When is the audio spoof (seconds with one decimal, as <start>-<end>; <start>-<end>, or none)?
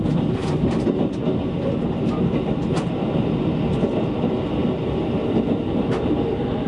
4.6-6.1